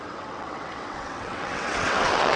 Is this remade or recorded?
remade